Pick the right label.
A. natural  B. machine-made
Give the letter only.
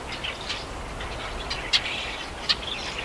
A